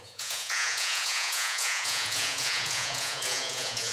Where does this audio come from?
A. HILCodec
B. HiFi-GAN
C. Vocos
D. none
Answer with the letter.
C